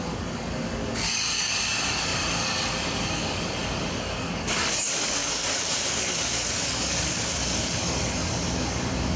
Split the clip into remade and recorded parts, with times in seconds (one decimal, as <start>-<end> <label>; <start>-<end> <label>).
0.0-9.2 remade